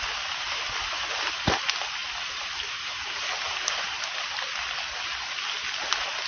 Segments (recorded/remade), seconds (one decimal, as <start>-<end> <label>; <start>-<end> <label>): 0.0-2.0 recorded; 2.0-4.3 remade; 4.3-6.3 recorded